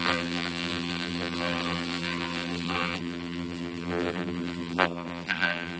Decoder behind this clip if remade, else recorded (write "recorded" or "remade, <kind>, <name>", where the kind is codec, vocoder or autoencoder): remade, vocoder, BigVGAN v2